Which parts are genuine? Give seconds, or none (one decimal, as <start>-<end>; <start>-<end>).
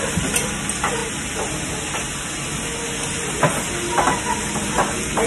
0.0-5.3